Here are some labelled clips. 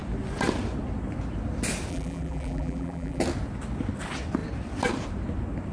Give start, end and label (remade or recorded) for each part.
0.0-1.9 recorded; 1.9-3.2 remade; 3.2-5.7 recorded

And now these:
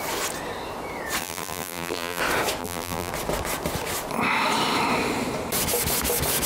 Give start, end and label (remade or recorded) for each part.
0.0-1.2 recorded; 1.2-2.2 remade; 2.2-2.6 recorded; 2.6-3.1 remade; 3.1-6.5 recorded